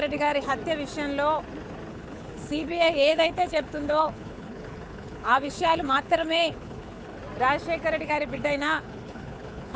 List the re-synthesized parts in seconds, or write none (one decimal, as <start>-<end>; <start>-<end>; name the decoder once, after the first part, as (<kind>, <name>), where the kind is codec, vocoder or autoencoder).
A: 0.0-0.5 (codec, HILCodec); 1.9-7.2; 8.0-9.8